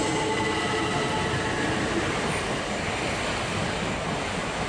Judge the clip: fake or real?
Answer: real